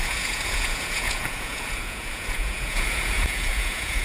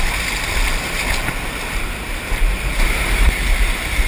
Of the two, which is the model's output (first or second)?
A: first